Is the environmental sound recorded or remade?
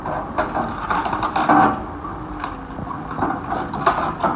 recorded